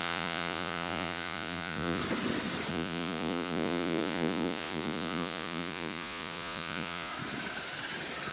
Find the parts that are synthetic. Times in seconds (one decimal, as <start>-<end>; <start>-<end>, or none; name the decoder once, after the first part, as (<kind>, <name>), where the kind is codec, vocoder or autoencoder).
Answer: 0.0-2.0 (vocoder, Vocos); 2.7-7.1